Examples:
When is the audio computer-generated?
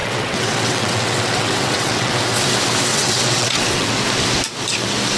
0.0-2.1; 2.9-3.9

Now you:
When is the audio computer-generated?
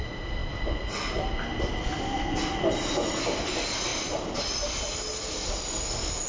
none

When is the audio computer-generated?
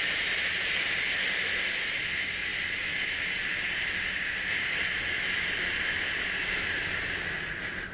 none